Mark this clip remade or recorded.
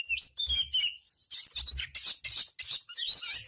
recorded